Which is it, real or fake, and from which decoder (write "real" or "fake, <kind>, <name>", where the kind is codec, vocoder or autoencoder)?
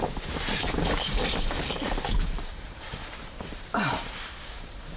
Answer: fake, vocoder, BigVGAN v2